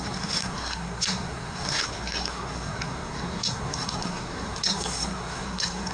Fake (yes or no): yes